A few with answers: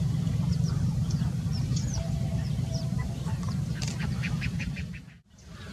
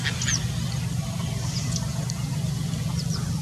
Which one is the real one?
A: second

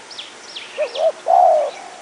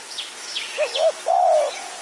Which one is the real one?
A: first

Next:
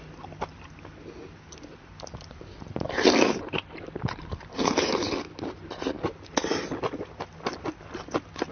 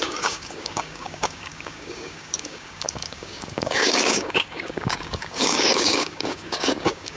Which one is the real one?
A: first